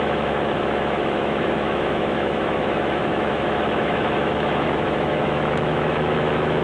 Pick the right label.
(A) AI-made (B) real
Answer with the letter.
A